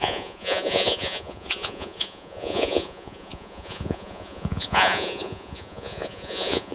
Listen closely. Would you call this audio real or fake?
fake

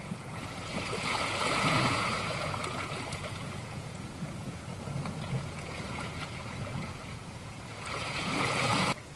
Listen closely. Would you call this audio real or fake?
fake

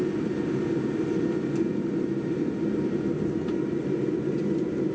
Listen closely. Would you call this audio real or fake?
real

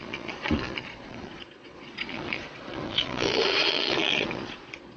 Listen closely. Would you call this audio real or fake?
fake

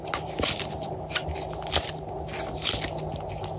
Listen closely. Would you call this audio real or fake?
real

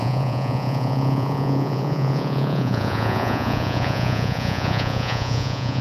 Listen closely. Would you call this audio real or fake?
fake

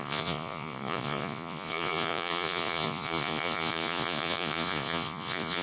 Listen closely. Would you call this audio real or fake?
fake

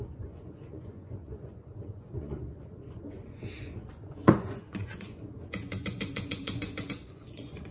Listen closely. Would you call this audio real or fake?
fake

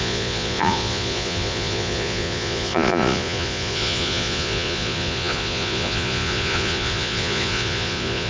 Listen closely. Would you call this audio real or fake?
fake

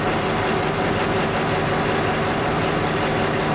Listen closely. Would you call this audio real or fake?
real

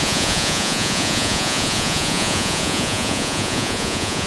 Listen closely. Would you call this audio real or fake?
fake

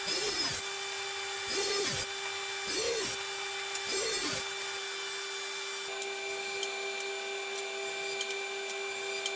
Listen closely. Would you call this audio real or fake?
real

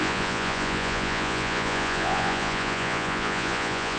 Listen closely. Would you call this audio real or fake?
fake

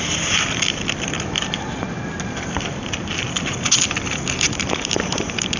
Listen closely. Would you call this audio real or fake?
real